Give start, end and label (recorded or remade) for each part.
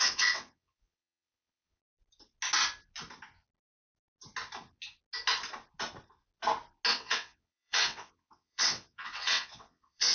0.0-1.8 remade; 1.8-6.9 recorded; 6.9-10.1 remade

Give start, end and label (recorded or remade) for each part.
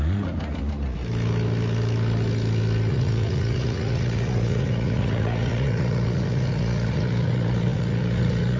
0.0-1.0 remade; 1.0-2.9 recorded; 2.9-8.6 remade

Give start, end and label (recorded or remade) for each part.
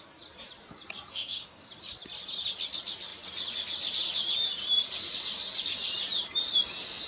0.0-1.1 recorded; 1.1-1.7 remade; 1.7-7.1 recorded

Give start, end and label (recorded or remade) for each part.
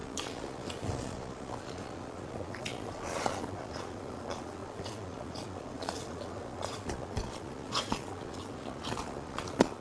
0.0-9.8 remade